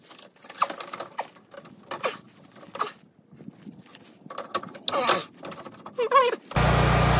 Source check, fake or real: real